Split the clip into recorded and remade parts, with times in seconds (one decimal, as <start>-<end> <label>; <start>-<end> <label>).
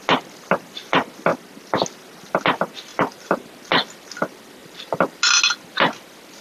0.0-2.9 recorded; 2.9-3.4 remade; 3.4-4.6 recorded; 4.6-5.2 remade; 5.2-6.4 recorded